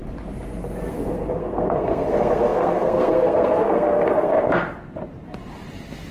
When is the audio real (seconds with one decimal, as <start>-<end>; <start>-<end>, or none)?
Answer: 0.0-0.9; 4.5-6.1